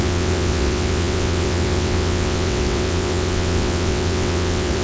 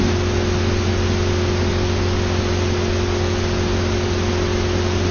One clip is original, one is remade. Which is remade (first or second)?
first